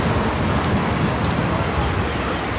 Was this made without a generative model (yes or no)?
yes